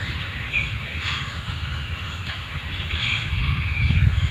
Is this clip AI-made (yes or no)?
yes